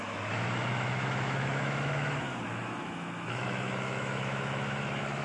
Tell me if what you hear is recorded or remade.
remade